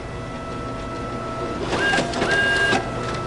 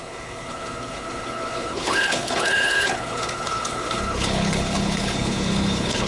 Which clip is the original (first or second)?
first